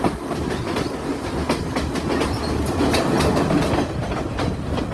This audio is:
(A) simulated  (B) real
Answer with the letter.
B